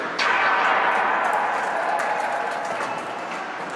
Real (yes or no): yes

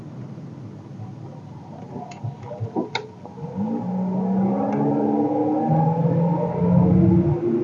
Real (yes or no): yes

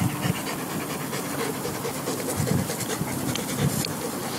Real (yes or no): yes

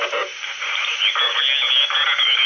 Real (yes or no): yes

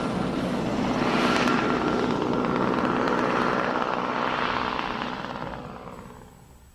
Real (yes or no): yes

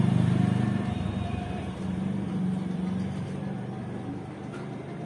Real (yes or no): no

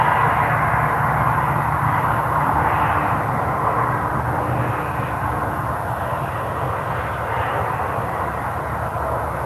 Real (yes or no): yes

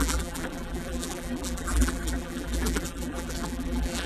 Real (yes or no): no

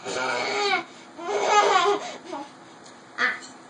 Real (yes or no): yes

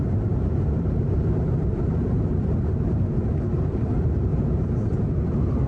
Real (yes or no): no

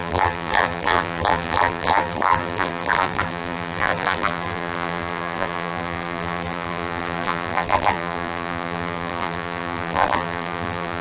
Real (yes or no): no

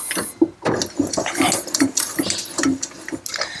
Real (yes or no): yes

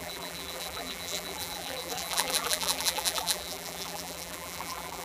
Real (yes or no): no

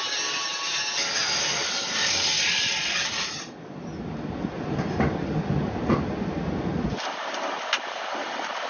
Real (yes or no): yes